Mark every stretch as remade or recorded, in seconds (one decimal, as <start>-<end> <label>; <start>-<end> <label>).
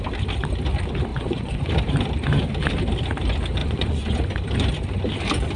0.0-1.1 recorded; 1.1-1.7 remade; 1.7-3.6 recorded; 3.6-4.2 remade; 4.2-5.6 recorded